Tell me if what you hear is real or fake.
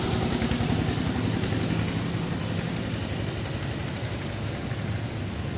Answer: real